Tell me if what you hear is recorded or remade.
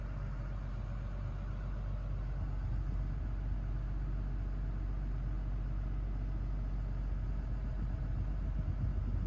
recorded